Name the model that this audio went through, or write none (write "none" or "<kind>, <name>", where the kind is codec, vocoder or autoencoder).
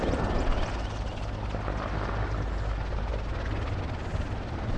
none